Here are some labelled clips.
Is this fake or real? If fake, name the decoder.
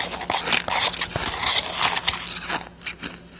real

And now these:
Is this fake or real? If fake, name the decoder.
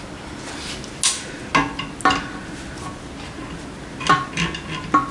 real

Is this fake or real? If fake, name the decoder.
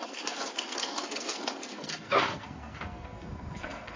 fake, codec, SNAC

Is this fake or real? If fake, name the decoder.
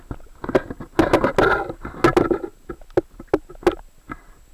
real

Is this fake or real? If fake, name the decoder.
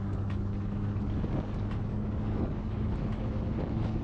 fake, codec, DAC